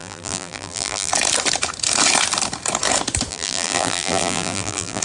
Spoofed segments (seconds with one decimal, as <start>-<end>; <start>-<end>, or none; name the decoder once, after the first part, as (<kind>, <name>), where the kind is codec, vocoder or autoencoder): 0.0-1.1 (vocoder, BigVGAN v2); 3.3-5.0